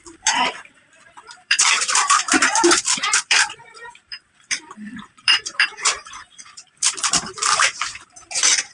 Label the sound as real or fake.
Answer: fake